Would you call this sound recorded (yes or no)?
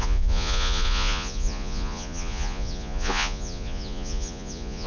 no